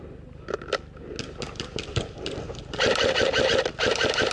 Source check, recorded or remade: recorded